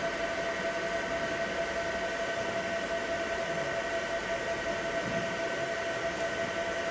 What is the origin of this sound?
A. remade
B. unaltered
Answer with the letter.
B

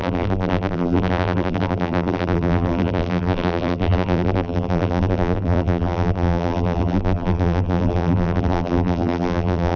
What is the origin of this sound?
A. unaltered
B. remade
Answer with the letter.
B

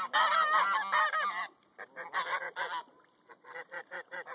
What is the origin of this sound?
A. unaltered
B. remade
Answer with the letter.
A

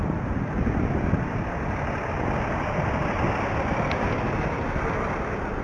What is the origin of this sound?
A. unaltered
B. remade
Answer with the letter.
A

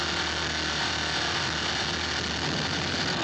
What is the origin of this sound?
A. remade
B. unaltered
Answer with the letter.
B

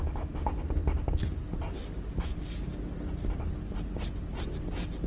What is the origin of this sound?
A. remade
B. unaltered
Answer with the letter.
B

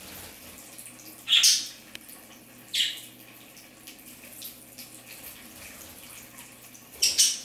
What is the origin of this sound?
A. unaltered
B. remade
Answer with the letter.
A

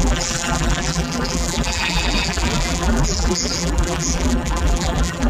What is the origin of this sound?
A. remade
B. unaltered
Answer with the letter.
A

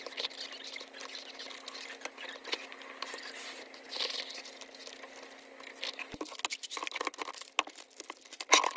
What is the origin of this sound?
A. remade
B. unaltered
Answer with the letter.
B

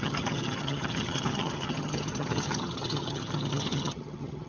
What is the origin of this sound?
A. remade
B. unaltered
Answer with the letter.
A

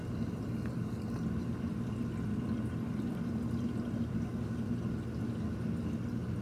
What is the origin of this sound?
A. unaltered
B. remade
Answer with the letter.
A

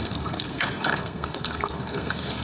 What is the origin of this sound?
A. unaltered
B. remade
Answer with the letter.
B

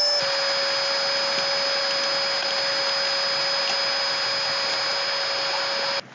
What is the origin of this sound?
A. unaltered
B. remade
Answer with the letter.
A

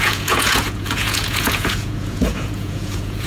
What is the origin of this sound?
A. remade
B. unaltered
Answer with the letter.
A